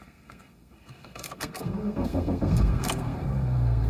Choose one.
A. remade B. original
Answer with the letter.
A